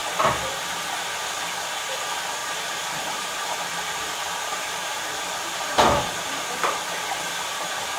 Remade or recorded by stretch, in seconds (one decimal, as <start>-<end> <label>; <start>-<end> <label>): 0.0-2.4 recorded; 2.4-7.2 remade; 7.2-8.0 recorded